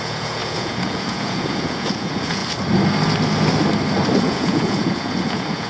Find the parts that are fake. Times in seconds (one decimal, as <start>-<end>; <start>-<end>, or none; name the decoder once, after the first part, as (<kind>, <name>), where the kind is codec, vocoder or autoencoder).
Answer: 0.0-2.4 (vocoder, Vocos); 4.2-5.7